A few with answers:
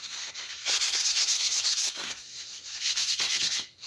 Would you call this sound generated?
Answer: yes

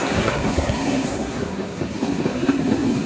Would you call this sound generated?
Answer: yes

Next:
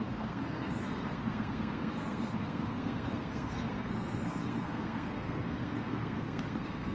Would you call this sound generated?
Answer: yes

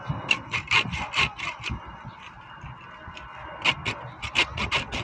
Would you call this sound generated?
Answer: no